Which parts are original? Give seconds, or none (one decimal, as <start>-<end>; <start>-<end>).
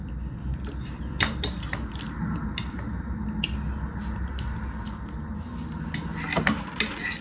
0.0-7.2